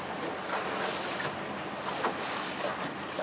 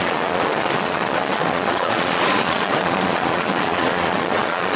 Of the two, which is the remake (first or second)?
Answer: second